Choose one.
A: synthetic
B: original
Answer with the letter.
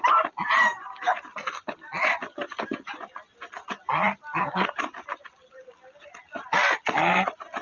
B